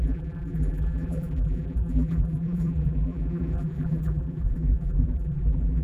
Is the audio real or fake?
fake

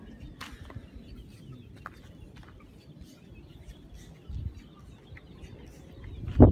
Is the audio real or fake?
real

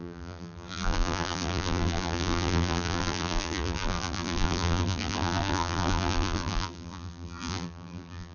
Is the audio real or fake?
fake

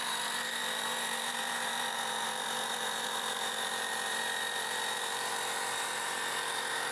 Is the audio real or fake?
fake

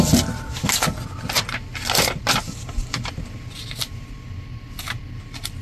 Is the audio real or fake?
real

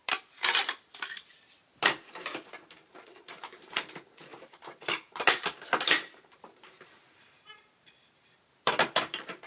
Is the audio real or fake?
fake